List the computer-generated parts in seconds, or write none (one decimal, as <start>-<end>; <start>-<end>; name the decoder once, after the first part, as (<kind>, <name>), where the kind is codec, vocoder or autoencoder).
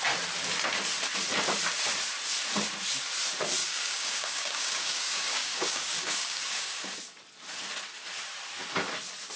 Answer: 3.6-7.0 (codec, DAC)